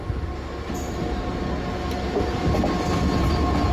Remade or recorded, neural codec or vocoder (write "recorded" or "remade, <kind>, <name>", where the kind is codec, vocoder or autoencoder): recorded